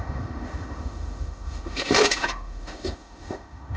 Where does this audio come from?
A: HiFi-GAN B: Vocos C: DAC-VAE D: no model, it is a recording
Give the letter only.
C